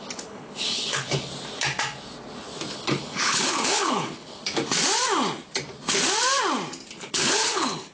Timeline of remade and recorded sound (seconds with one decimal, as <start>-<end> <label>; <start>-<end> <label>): 0.0-1.3 remade; 1.3-2.7 recorded; 2.7-4.4 remade; 4.4-6.9 recorded; 6.9-7.9 remade